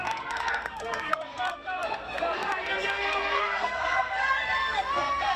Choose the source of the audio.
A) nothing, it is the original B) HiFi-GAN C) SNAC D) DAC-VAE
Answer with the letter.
C